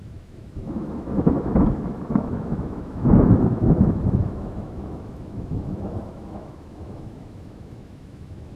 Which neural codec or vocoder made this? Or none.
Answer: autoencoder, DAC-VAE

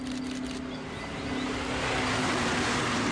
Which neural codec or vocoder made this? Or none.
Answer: none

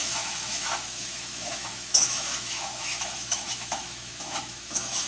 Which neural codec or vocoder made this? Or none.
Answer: autoencoder, DAC-VAE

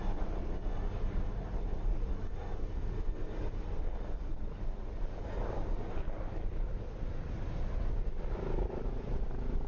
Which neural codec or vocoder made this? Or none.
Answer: none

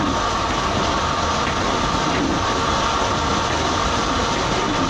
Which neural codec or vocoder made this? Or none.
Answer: none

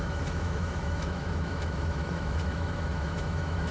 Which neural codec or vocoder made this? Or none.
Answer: autoencoder, DAC-VAE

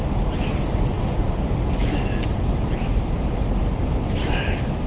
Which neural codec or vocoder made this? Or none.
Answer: none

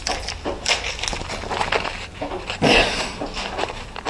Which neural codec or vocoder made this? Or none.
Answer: none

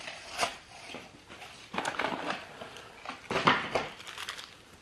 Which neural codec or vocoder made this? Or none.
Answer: none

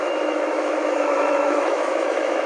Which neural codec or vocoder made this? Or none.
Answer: autoencoder, DAC-VAE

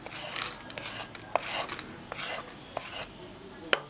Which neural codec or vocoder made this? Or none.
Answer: none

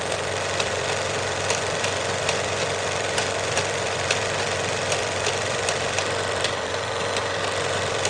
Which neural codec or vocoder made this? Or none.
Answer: vocoder, BigVGAN v2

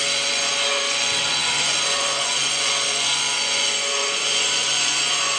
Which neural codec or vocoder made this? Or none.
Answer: vocoder, Vocos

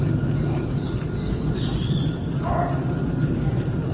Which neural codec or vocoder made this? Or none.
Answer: none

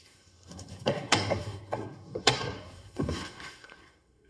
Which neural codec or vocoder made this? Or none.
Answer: codec, SNAC